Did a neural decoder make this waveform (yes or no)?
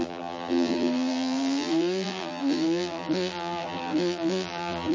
yes